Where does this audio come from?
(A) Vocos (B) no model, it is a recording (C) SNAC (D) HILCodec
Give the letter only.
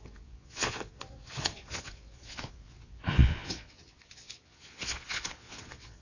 A